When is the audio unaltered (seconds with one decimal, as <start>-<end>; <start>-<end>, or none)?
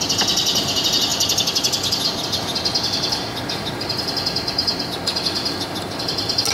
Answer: 0.0-6.5